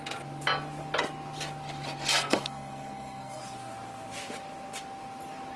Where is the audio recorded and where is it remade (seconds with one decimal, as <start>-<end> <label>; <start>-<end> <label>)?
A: 0.0-2.1 recorded; 2.1-3.4 remade; 3.4-5.6 recorded